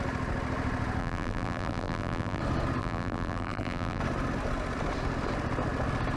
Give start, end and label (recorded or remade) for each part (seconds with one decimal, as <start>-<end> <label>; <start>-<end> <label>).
0.0-1.0 recorded; 1.0-2.4 remade; 2.4-2.8 recorded; 2.8-4.0 remade; 4.0-6.2 recorded